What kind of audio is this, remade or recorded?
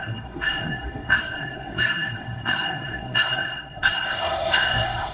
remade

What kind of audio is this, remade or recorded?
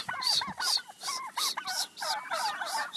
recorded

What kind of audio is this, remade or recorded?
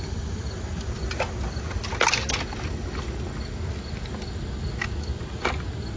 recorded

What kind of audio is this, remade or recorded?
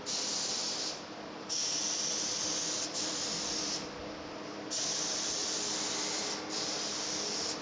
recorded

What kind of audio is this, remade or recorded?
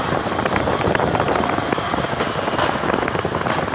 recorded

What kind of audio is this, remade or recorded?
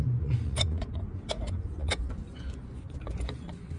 remade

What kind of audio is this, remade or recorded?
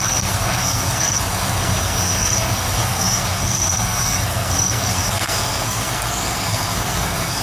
remade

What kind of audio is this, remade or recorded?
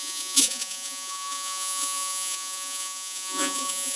remade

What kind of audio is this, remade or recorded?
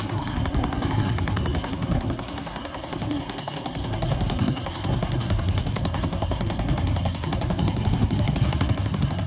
remade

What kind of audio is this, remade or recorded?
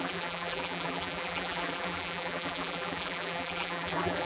remade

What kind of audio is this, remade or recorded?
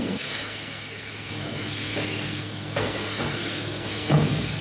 remade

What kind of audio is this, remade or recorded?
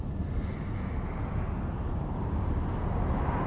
recorded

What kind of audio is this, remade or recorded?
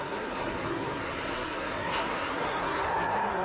remade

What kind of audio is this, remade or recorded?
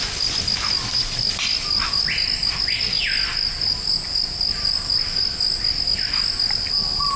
recorded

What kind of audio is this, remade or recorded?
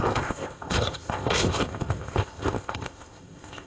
remade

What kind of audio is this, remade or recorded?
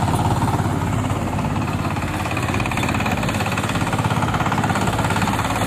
recorded